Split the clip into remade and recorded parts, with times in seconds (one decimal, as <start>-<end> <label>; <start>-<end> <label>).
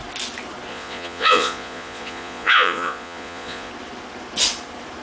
0.0-0.7 recorded; 0.7-3.7 remade; 3.7-5.0 recorded